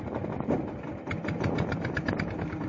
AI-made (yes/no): no